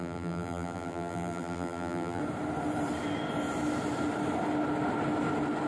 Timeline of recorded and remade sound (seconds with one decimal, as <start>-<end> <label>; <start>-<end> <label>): 0.0-2.2 remade; 2.2-5.7 recorded